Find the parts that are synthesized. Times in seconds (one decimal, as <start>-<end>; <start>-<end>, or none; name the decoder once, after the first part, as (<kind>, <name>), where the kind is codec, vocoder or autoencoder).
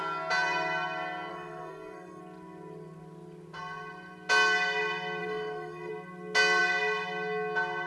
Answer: 1.3-2.2 (codec, SNAC); 5.2-5.9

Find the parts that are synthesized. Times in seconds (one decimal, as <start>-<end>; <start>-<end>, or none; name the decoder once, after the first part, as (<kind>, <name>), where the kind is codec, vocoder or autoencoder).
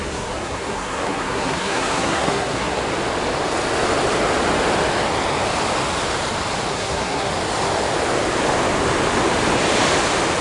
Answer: 0.0-2.8 (codec, SNAC); 6.7-7.3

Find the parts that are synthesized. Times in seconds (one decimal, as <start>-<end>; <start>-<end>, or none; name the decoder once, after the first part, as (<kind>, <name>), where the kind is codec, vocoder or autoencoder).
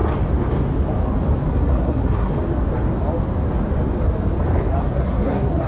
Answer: 1.5-2.3 (codec, SNAC); 4.8-5.7